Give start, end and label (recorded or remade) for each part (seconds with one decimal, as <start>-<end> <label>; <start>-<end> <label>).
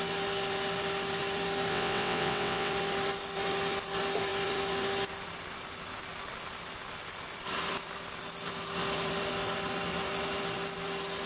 0.0-1.7 recorded; 1.7-2.7 remade; 2.7-11.3 recorded